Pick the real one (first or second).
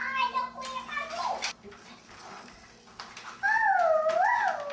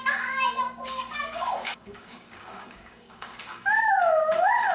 first